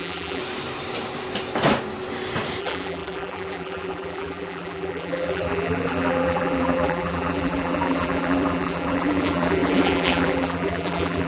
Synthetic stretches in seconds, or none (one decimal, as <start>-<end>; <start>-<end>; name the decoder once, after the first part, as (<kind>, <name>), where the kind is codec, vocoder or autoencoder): 0.0-0.4 (vocoder, BigVGAN v2); 2.6-11.3